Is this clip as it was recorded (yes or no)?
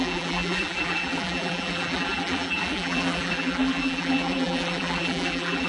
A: no